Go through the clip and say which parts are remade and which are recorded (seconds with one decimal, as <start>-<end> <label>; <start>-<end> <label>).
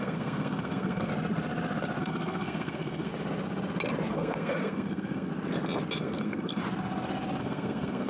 0.0-1.1 remade; 1.1-2.0 recorded; 2.0-3.1 remade; 3.1-4.1 recorded; 4.1-5.3 remade; 5.3-6.0 recorded; 6.0-6.6 remade; 6.6-7.4 recorded; 7.4-8.1 remade